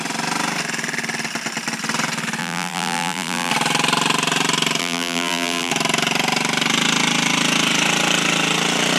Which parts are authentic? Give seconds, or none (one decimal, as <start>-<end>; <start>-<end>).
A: 0.0-2.4; 3.5-4.8; 5.7-9.0